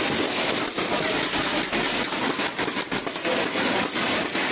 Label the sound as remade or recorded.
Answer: recorded